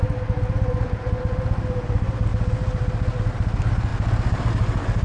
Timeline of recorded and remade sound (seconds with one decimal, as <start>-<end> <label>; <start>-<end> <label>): 0.0-5.0 recorded